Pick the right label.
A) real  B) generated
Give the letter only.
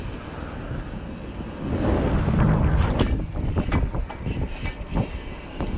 A